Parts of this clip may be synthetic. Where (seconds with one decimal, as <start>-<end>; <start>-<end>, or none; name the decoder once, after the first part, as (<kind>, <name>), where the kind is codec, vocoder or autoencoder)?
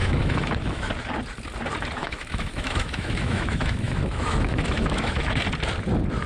0.0-0.9 (autoencoder, DAC-VAE); 2.0-5.4